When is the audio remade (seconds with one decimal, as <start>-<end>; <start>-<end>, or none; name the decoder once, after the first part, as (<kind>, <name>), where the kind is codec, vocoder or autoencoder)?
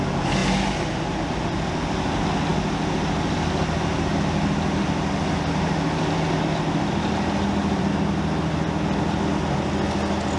none